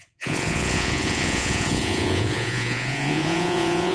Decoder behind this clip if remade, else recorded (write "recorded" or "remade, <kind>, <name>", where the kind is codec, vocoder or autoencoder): remade, vocoder, Vocos